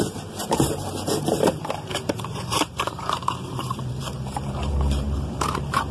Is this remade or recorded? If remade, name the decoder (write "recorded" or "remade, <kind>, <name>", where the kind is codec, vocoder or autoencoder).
remade, vocoder, BigVGAN v2